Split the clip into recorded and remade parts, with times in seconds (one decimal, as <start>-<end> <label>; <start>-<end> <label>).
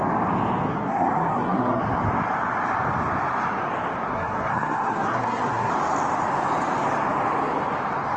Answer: 0.0-0.7 recorded; 0.7-1.8 remade; 1.8-4.1 recorded; 4.1-5.7 remade; 5.7-8.2 recorded